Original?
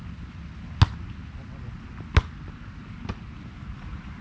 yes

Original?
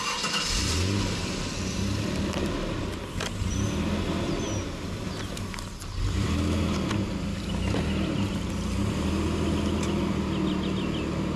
yes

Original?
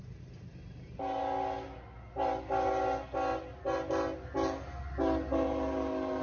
yes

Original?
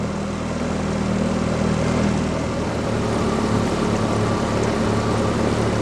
yes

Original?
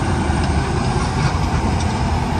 yes